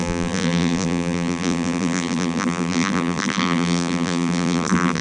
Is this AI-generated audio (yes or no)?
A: yes